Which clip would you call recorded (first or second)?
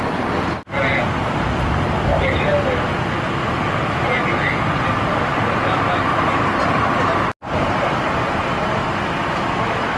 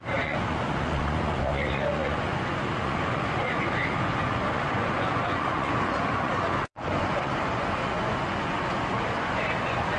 first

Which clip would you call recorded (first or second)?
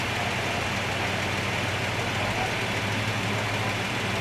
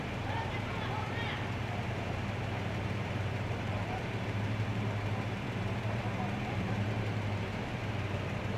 first